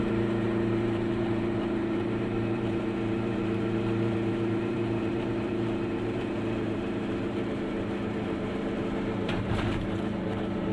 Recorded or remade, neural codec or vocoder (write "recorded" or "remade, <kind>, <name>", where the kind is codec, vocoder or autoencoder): remade, vocoder, BigVGAN v2